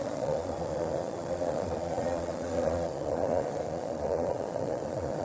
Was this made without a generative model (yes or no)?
no